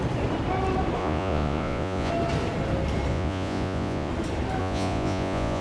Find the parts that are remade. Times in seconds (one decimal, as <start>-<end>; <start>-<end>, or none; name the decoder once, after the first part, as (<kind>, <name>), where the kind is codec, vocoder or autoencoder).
1.0-2.1 (vocoder, Vocos); 3.1-4.1; 4.6-5.6